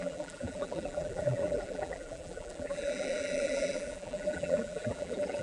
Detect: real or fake fake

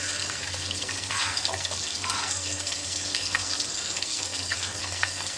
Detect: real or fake fake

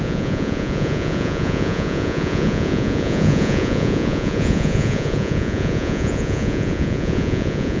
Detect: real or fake fake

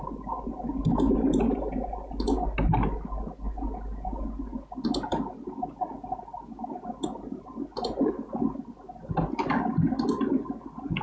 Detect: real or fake real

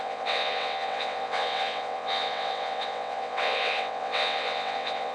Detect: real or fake fake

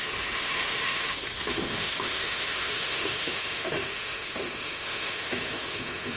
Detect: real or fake fake